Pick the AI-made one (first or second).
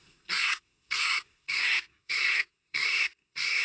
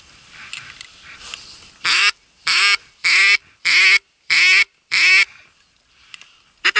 first